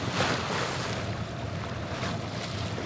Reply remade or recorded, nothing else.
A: remade